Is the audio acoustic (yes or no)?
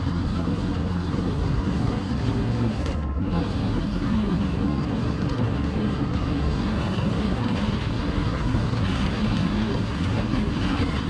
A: no